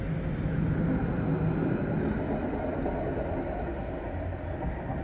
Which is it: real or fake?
real